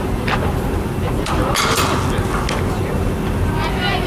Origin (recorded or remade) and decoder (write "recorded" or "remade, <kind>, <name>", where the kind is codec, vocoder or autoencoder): recorded